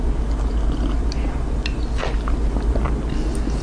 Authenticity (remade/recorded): recorded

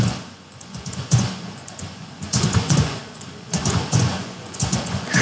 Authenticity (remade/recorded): remade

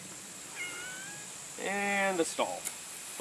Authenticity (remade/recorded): recorded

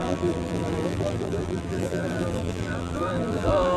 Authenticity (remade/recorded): remade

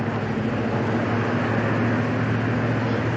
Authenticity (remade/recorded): recorded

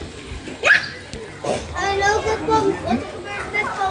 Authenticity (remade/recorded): recorded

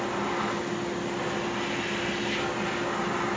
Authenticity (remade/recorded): remade